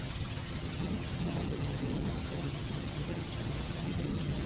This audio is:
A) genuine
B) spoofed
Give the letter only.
B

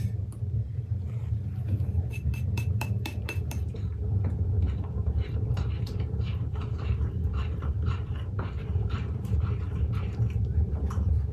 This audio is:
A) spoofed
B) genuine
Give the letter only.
A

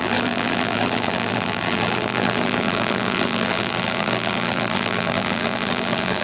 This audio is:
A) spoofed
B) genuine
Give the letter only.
A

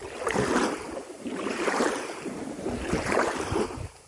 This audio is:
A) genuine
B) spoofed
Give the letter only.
B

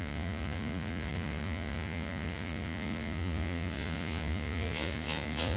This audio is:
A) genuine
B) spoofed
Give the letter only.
B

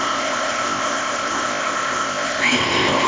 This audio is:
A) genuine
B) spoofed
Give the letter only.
B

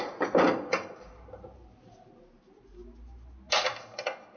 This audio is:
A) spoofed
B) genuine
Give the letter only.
B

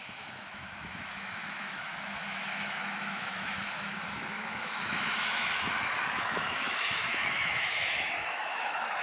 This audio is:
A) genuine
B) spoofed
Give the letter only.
B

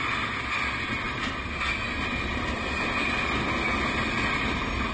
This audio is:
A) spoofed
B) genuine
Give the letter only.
B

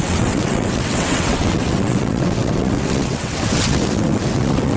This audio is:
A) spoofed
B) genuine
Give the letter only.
A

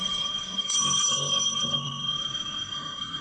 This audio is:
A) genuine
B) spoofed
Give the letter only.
B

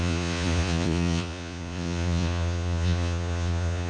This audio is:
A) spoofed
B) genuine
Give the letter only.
A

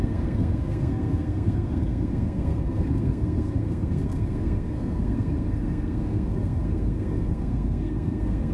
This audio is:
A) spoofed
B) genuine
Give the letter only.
A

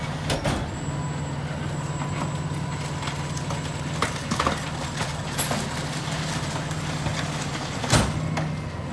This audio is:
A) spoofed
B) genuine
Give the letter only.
B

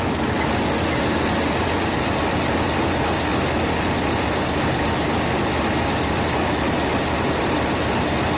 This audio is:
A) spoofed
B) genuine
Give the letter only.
B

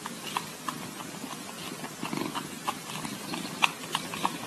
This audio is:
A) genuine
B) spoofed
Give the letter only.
A